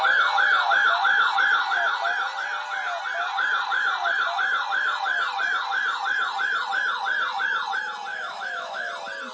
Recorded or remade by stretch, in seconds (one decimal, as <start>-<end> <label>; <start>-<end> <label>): 0.0-8.1 recorded; 8.1-8.9 remade; 8.9-9.3 recorded